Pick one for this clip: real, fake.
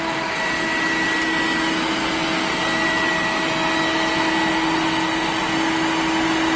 real